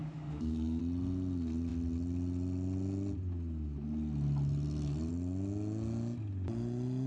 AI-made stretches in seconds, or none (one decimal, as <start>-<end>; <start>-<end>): 0.0-0.8

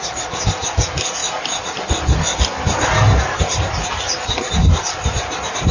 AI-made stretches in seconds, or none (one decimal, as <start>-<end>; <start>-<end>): none